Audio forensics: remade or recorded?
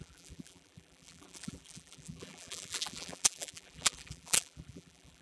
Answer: remade